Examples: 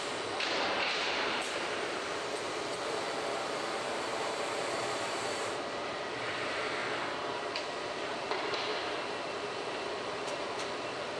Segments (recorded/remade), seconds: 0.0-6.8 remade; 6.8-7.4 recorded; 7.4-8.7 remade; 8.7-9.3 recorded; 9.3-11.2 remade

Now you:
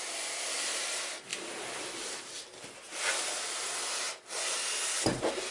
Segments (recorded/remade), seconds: 0.0-1.3 recorded; 1.3-3.1 remade; 3.1-5.5 recorded

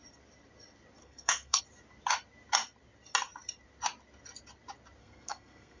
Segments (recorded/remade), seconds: 0.0-1.0 recorded; 1.0-1.6 remade; 1.6-5.0 recorded; 5.0-5.8 remade

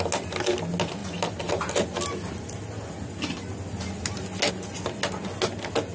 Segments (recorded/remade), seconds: 0.0-5.9 recorded

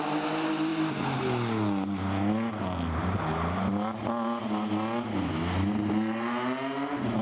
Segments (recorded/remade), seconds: 0.0-7.2 recorded

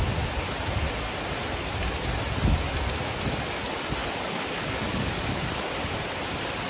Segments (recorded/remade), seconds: 0.0-4.0 recorded; 4.0-5.7 remade; 5.7-6.7 recorded

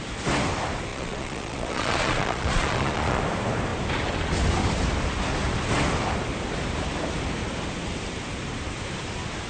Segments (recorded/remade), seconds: 0.0-0.9 recorded; 0.9-3.2 remade; 3.2-9.5 recorded